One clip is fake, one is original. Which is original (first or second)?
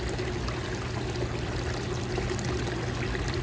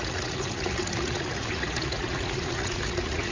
first